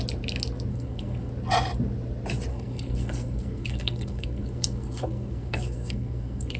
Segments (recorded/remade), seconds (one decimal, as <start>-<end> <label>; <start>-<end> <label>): 0.0-0.7 recorded; 0.7-1.3 remade; 1.3-2.5 recorded; 2.5-6.6 remade